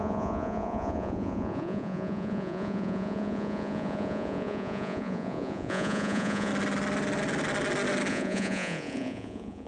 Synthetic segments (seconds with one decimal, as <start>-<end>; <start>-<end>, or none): 0.0-6.5; 8.1-9.7